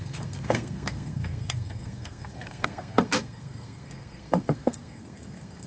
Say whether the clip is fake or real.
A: fake